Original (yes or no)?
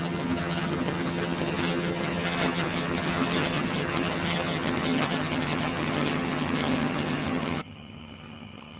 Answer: no